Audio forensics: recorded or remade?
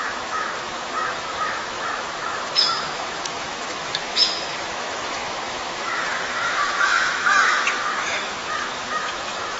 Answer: remade